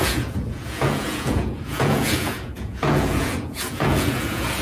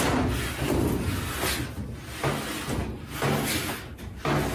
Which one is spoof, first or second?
first